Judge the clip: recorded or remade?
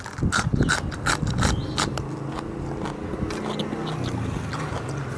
recorded